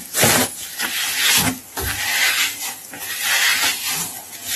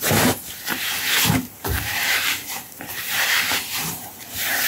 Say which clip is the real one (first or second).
first